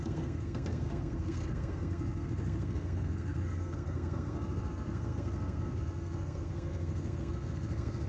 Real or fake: fake